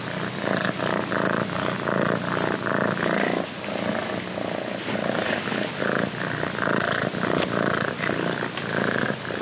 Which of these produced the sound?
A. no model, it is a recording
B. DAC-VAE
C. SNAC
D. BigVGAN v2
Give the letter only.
A